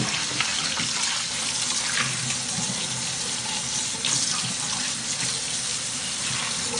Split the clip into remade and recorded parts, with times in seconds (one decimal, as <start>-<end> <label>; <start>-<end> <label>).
0.0-5.7 recorded; 5.7-6.3 remade; 6.3-6.8 recorded